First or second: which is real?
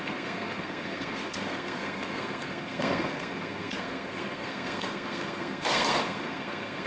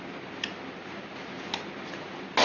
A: second